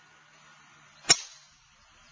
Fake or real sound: real